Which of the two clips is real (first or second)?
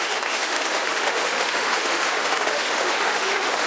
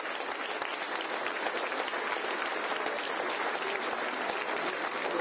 second